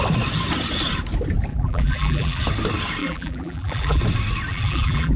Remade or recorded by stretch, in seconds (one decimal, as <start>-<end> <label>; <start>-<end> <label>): 0.0-1.5 recorded; 1.5-2.4 remade; 2.4-3.0 recorded; 3.0-4.0 remade; 4.0-4.5 recorded; 4.5-5.2 remade